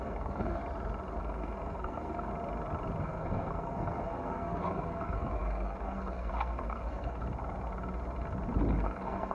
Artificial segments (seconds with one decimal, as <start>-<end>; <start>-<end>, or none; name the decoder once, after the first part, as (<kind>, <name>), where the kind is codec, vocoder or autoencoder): 0.0-0.6 (codec, SNAC); 1.2-2.3; 3.0-7.2; 8.7-9.3